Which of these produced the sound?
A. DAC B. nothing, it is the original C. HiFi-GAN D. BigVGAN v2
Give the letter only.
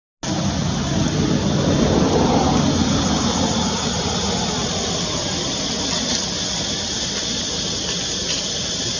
B